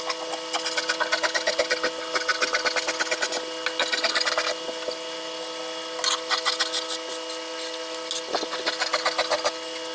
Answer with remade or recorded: recorded